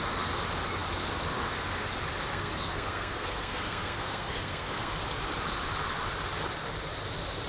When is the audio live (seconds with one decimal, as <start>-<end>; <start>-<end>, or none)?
0.0-2.3; 4.9-7.5